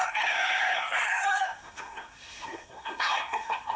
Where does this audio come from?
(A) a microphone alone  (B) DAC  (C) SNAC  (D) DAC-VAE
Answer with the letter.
C